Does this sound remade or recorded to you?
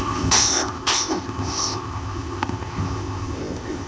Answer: remade